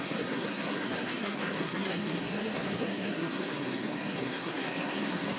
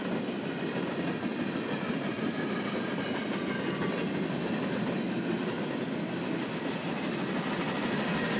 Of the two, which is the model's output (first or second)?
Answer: first